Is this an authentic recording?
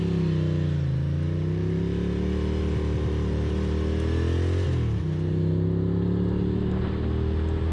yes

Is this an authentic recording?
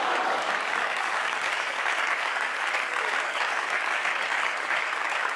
no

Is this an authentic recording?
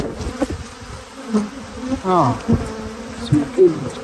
yes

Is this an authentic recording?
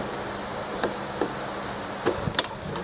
yes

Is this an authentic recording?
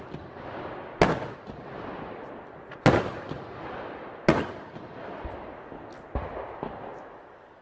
yes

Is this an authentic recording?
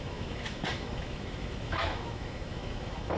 no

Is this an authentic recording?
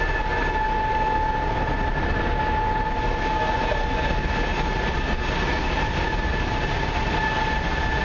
yes